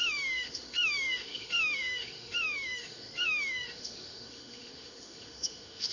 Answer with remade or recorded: remade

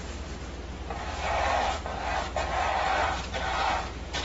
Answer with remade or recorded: recorded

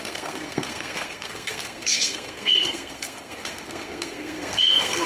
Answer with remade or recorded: remade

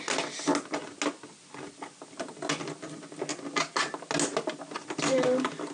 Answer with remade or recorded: recorded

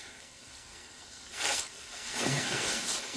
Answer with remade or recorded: remade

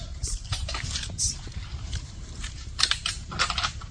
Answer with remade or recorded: remade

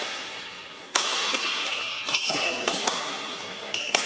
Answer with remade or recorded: remade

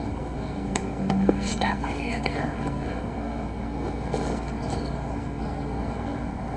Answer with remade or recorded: remade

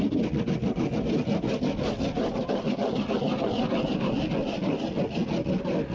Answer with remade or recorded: recorded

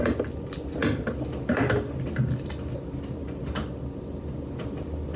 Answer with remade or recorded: recorded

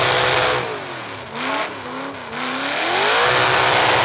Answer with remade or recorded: recorded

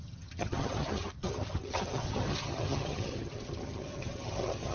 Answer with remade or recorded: remade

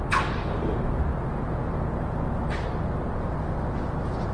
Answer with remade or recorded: recorded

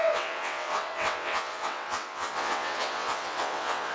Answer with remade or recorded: remade